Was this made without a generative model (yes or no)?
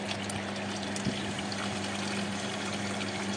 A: yes